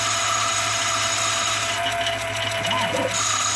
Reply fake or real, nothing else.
real